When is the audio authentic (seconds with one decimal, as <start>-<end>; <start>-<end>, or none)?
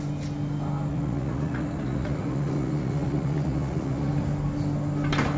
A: 0.0-0.9; 4.1-5.4